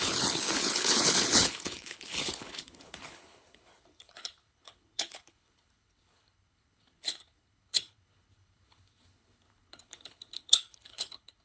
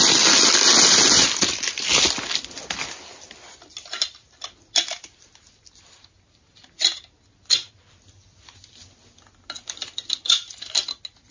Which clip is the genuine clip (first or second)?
second